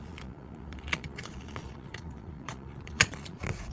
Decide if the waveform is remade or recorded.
remade